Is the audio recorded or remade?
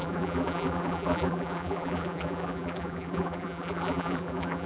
remade